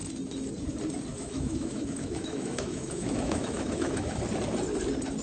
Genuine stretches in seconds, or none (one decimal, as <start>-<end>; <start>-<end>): 0.0-1.1; 4.2-5.2